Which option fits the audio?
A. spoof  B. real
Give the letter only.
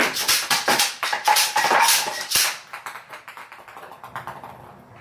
B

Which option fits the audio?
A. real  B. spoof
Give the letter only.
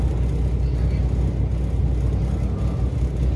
A